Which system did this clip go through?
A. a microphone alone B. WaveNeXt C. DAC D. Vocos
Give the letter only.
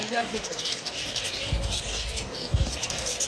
C